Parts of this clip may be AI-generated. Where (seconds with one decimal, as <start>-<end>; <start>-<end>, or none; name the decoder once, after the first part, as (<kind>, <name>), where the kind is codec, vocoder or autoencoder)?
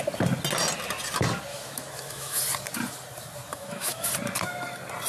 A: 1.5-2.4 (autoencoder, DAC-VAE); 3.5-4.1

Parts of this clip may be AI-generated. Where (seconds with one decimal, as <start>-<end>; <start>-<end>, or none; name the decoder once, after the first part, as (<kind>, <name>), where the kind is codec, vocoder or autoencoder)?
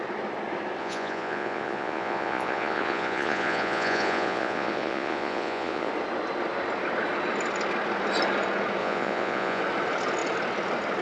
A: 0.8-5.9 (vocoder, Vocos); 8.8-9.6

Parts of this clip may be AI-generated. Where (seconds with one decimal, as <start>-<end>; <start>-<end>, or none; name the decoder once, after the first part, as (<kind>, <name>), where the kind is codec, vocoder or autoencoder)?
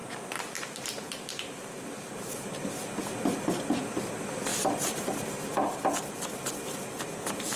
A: 0.0-2.8 (vocoder, BigVGAN v2); 4.5-6.5